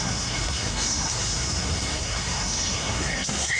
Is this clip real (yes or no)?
no